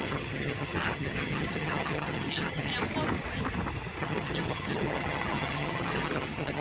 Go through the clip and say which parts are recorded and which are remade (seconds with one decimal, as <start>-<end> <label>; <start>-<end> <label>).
0.0-2.7 remade; 2.7-4.0 recorded; 4.0-6.6 remade